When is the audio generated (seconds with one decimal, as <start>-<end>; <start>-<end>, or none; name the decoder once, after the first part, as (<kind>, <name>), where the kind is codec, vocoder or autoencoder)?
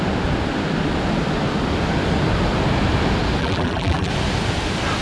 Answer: 3.4-4.1 (vocoder, BigVGAN v2)